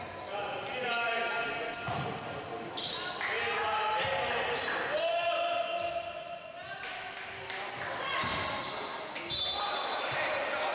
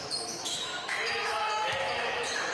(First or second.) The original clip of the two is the first